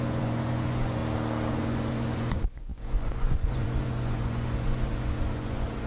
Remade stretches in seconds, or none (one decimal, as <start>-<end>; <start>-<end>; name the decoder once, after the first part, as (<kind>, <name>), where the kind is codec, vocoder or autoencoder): 0.0-1.0 (vocoder, Vocos); 1.5-5.9